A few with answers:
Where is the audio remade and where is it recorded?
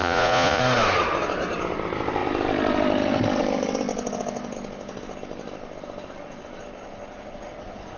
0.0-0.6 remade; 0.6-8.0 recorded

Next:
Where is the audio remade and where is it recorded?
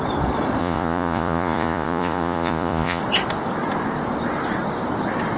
0.0-0.6 recorded; 0.6-3.0 remade; 3.0-5.4 recorded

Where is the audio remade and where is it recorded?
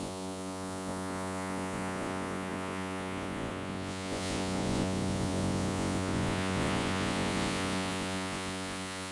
0.0-9.1 remade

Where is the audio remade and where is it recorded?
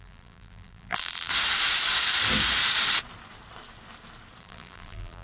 0.0-1.3 remade; 1.3-4.4 recorded; 4.4-5.2 remade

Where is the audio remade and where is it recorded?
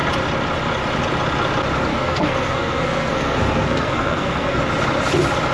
0.0-1.9 recorded; 1.9-4.6 remade; 4.6-5.5 recorded